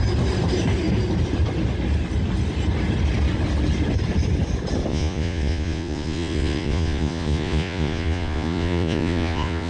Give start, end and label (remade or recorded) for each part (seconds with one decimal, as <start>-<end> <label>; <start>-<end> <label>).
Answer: 0.0-4.9 recorded; 4.9-9.7 remade